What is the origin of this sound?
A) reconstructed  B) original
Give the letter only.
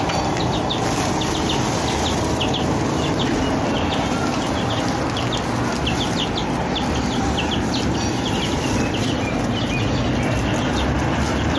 B